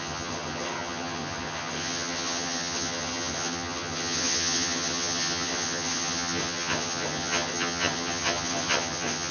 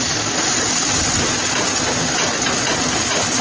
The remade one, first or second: first